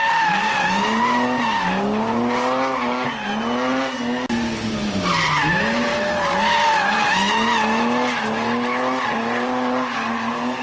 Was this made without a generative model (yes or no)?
yes